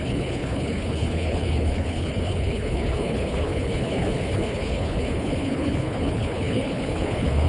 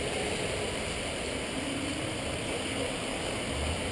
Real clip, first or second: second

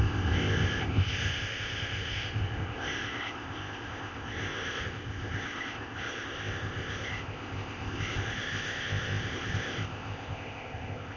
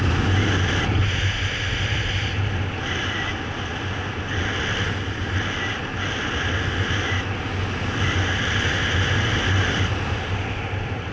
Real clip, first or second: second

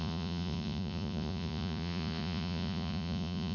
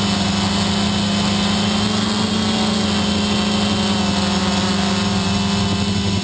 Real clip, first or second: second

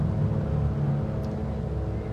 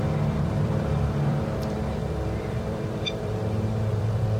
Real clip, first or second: first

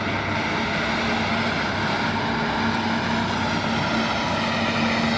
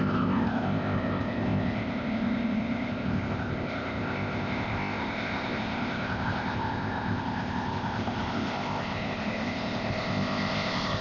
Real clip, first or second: first